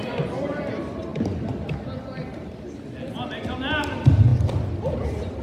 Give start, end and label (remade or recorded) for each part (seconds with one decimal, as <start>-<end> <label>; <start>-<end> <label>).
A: 0.0-5.4 recorded